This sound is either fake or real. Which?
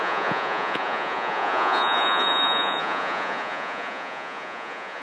fake